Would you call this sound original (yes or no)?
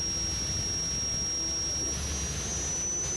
yes